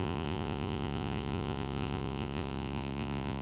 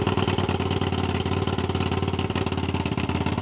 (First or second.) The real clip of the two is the second